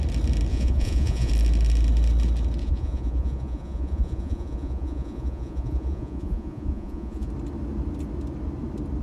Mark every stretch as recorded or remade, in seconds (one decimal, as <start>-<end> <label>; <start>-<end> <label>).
0.0-0.5 recorded; 0.5-1.3 remade; 1.3-2.6 recorded; 2.6-7.3 remade; 7.3-9.0 recorded